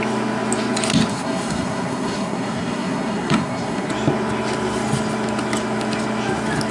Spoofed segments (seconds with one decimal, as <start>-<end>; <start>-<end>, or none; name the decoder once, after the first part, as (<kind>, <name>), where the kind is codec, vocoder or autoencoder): 1.1-3.9 (codec, SNAC)